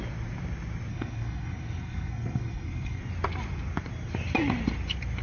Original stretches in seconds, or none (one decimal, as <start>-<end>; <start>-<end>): 0.0-0.9; 3.0-5.2